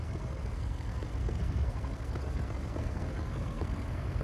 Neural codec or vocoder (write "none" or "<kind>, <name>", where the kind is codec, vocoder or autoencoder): codec, SNAC